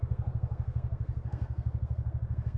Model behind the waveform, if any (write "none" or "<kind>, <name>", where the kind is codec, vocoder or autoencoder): codec, SNAC